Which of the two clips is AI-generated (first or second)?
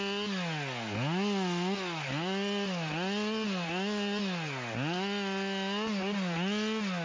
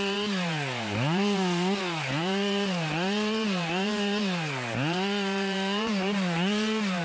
second